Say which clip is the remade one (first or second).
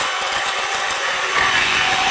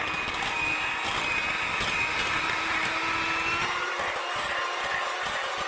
first